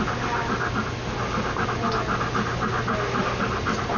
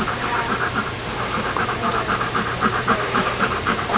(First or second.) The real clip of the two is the first